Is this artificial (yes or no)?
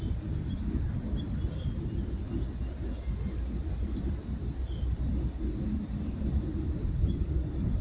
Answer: no